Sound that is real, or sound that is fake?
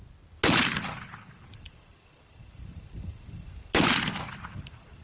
real